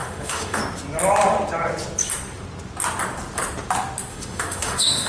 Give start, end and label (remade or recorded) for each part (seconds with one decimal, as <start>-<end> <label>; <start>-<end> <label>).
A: 0.0-0.6 remade; 0.6-4.1 recorded; 4.1-5.1 remade